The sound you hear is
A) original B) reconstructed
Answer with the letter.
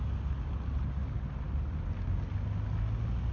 A